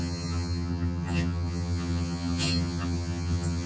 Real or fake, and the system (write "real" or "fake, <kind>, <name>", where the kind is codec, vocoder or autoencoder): fake, vocoder, HiFi-GAN